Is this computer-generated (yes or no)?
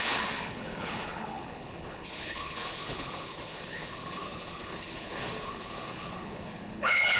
yes